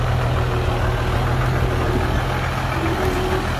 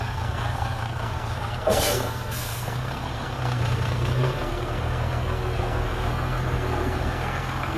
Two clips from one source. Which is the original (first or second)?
first